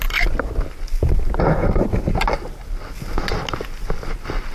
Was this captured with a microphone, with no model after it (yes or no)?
yes